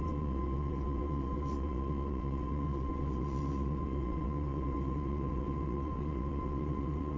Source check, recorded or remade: remade